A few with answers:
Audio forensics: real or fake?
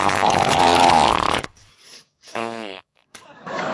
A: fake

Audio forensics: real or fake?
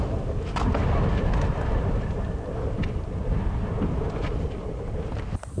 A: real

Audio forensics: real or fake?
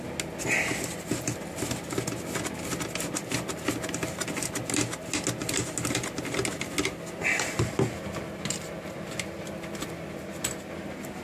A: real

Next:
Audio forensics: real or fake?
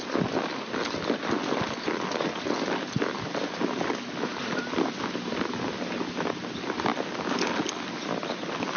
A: real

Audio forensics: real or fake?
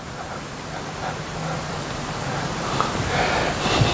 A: real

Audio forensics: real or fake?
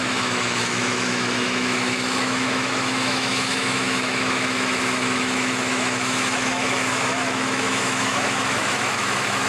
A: fake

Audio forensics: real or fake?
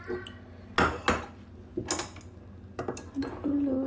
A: real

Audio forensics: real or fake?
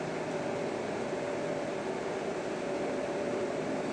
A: fake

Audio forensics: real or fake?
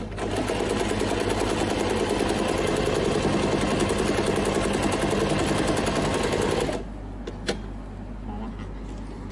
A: real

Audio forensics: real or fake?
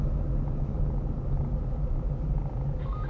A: real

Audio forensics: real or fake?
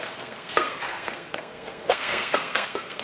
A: fake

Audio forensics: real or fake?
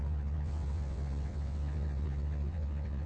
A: fake